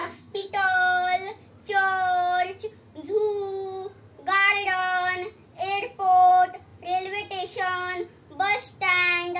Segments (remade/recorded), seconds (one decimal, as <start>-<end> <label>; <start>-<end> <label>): 0.0-0.5 remade; 0.5-9.4 recorded